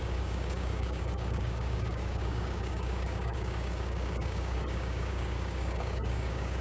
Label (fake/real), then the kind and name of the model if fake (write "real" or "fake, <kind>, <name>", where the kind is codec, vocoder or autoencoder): fake, codec, DAC